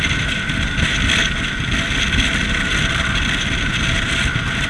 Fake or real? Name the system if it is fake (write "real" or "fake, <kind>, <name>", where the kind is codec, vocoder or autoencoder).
real